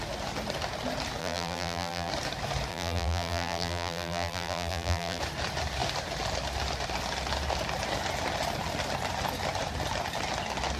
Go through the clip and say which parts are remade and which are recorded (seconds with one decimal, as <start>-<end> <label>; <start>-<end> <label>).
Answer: 0.0-1.2 recorded; 1.2-2.1 remade; 2.1-2.7 recorded; 2.7-5.2 remade; 5.2-10.8 recorded